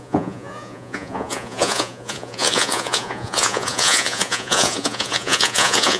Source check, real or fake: fake